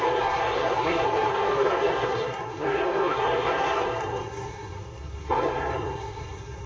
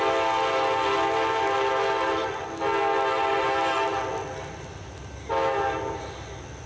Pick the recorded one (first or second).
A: second